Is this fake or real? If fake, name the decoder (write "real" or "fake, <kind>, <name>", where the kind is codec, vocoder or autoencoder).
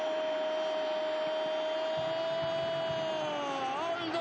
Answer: real